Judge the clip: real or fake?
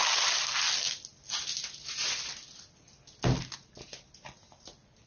real